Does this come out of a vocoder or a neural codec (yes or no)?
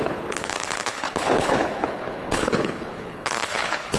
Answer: yes